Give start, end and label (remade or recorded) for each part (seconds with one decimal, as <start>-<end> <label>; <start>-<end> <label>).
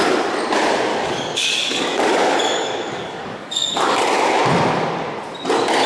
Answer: 0.0-0.9 recorded; 0.9-4.4 remade; 4.4-5.9 recorded